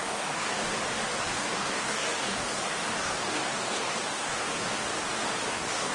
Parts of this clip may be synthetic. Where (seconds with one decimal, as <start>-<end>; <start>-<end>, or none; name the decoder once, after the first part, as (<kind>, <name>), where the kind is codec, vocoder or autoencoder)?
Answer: 0.0-0.7 (codec, DAC); 1.2-4.9; 5.5-5.9